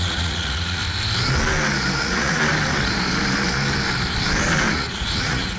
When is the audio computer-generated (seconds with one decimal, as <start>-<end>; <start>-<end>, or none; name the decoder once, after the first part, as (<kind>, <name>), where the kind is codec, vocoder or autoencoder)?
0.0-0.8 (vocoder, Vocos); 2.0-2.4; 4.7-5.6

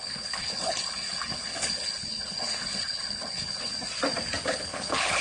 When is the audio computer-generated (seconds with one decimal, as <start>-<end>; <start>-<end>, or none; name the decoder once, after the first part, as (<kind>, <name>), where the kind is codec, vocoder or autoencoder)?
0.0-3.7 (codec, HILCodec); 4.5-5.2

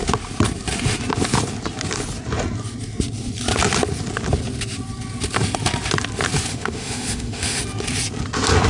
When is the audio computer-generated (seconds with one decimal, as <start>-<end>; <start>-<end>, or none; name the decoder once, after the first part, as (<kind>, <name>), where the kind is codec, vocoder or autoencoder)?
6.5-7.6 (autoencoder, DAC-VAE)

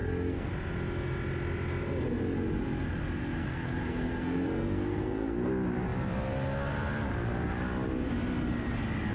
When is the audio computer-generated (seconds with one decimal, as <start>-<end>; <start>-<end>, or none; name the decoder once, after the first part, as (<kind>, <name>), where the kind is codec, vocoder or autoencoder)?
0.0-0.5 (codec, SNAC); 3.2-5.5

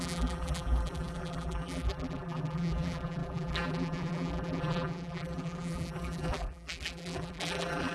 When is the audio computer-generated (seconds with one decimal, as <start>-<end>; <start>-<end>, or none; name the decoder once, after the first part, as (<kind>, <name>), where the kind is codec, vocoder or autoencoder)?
0.0-7.9 (vocoder, BigVGAN v2)

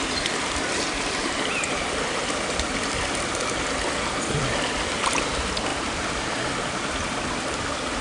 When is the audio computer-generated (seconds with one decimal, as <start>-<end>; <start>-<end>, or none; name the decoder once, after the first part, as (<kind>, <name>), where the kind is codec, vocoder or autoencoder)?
none

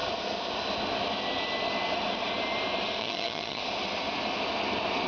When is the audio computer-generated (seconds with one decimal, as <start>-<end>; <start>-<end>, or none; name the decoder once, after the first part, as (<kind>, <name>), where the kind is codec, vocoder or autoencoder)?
3.0-3.6 (vocoder, HiFi-GAN)